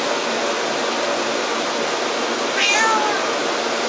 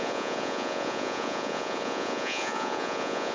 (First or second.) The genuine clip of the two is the first